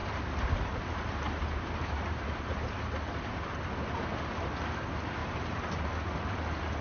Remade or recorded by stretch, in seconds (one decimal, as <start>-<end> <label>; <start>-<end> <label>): 0.0-2.7 remade; 2.7-5.2 recorded; 5.2-5.8 remade; 5.8-6.8 recorded